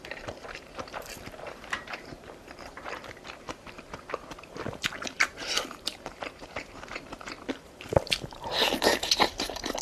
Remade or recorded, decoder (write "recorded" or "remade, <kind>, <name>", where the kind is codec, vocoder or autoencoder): remade, vocoder, BigVGAN v2